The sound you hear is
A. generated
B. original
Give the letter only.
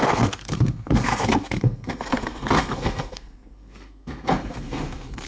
A